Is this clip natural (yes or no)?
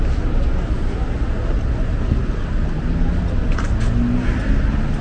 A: yes